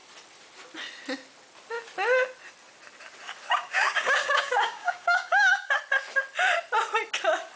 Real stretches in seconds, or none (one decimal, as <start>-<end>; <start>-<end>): 0.0-3.6; 5.7-7.6